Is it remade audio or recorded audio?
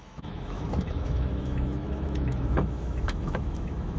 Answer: remade